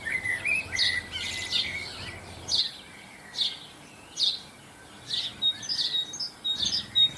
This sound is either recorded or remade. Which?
recorded